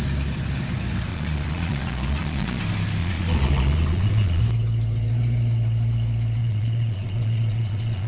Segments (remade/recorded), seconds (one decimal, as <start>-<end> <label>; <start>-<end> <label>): 0.0-1.1 recorded; 1.1-2.6 remade; 2.6-3.0 recorded; 3.0-4.4 remade; 4.4-6.4 recorded; 6.4-8.1 remade